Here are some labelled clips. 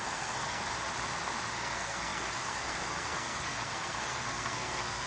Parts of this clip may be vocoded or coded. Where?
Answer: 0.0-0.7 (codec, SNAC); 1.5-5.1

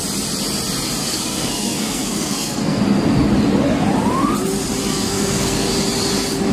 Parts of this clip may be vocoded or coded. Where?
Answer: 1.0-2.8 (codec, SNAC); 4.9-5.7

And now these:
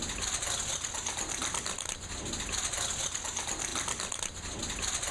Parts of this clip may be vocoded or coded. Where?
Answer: none

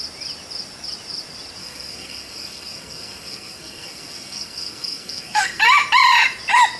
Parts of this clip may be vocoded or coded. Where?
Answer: 1.6-5.6 (codec, SNAC)

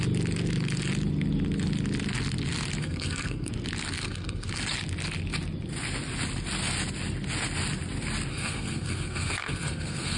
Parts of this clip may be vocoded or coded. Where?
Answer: 2.8-3.5 (codec, SNAC); 4.0-4.5; 8.3-10.2

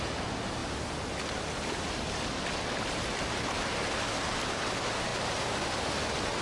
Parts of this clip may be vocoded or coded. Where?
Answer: none

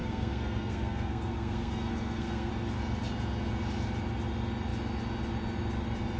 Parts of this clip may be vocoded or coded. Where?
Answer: 0.0-2.5 (codec, SNAC)